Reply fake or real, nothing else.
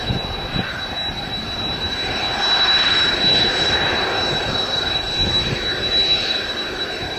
real